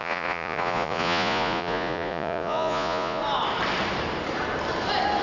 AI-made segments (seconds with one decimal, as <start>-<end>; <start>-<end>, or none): 0.0-3.2